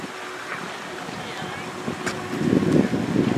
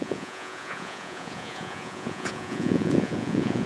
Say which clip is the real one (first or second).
first